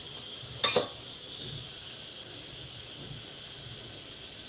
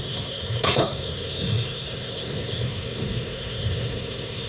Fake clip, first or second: second